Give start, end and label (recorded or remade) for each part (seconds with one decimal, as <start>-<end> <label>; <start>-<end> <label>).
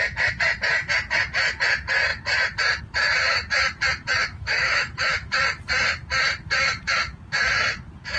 0.0-4.2 recorded; 4.2-5.4 remade; 5.4-8.2 recorded